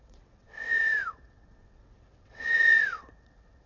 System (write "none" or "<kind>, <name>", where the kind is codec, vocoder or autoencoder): vocoder, WaveNeXt